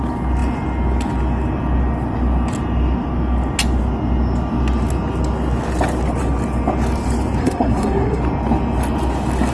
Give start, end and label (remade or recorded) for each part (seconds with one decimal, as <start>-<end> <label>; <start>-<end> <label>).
0.0-7.4 recorded; 7.4-8.2 remade; 8.2-9.5 recorded